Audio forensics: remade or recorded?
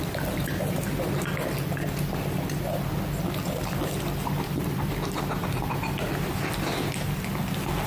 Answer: recorded